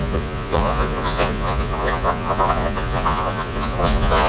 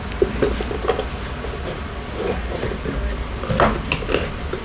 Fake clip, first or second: first